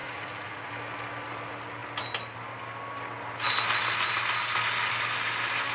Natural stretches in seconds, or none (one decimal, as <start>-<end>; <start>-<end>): 0.7-5.7